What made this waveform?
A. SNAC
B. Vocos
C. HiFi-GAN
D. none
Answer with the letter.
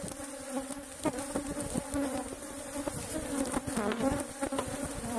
D